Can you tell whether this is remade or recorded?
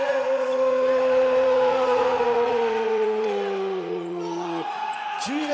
remade